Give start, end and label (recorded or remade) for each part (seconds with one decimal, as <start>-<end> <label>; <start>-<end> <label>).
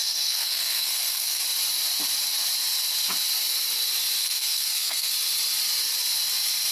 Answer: 0.0-1.4 remade; 1.4-4.2 recorded; 4.2-5.1 remade; 5.1-6.7 recorded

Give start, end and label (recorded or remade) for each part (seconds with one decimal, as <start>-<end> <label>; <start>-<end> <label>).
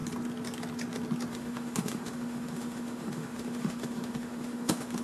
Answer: 0.0-1.3 recorded; 1.3-5.0 remade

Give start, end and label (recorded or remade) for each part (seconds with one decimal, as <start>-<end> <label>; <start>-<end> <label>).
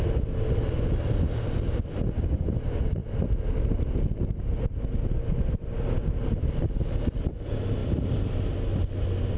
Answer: 0.0-9.4 recorded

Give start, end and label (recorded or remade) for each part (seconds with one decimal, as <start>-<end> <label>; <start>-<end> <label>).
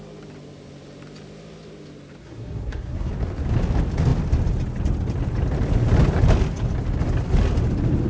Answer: 0.0-2.2 recorded; 2.2-3.1 remade; 3.1-8.1 recorded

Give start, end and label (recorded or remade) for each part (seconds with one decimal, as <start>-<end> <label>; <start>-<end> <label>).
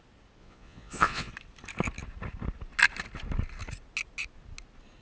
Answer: 0.0-0.4 recorded; 0.4-1.3 remade; 1.3-5.0 recorded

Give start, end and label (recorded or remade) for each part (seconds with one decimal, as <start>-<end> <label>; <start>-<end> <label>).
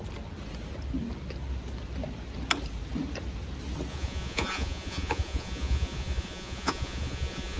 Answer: 0.0-3.9 recorded; 3.9-7.6 remade